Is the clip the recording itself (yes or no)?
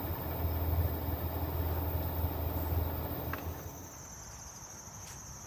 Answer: yes